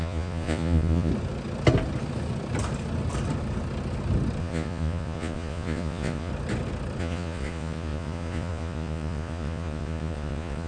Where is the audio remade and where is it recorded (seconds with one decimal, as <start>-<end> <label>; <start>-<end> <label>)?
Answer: 0.0-1.1 remade; 1.1-4.4 recorded; 4.4-6.3 remade; 6.3-7.0 recorded; 7.0-10.7 remade